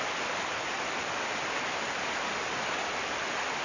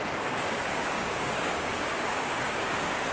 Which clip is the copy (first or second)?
second